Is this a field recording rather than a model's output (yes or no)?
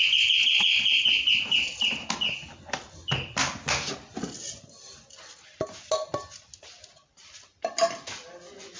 yes